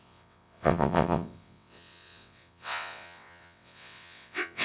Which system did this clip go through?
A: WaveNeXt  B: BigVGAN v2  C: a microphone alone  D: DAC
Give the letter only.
A